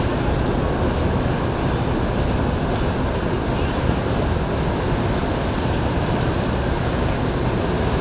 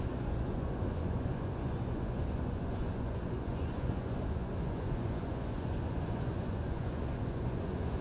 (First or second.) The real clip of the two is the first